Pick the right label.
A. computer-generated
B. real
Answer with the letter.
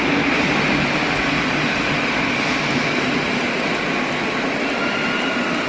B